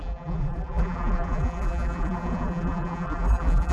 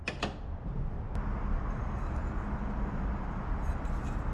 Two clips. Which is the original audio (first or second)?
second